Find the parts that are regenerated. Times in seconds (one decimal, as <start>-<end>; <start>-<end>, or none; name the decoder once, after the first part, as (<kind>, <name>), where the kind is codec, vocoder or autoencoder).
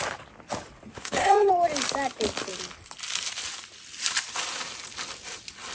0.9-1.5 (codec, SNAC)